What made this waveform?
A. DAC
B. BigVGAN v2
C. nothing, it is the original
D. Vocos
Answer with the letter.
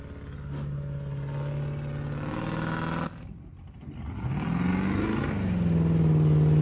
C